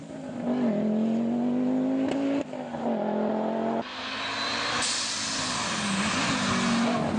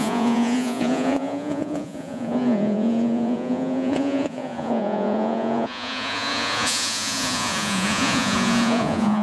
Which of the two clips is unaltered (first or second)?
first